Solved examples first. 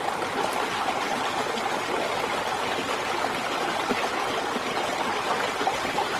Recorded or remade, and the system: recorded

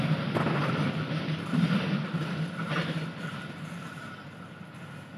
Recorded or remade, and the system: recorded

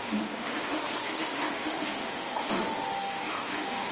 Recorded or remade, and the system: remade, autoencoder, DAC-VAE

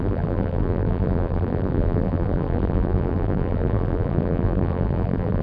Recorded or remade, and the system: remade, vocoder, BigVGAN v2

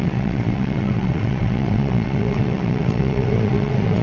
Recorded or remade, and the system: remade, vocoder, WaveNeXt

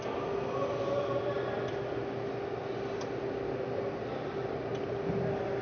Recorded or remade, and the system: recorded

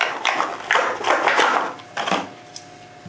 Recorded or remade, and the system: recorded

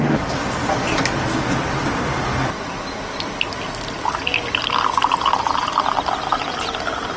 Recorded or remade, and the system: recorded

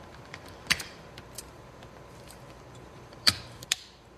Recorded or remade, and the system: remade, vocoder, BigVGAN v2